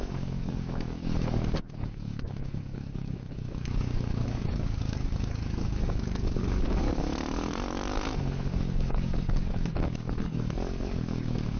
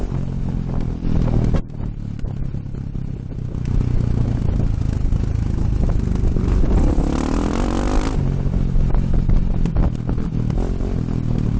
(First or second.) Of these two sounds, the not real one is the first